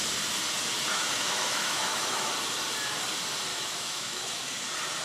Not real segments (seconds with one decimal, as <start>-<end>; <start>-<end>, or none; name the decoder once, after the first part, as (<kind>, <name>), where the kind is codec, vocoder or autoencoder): 0.9-2.3 (autoencoder, DAC-VAE); 3.5-4.4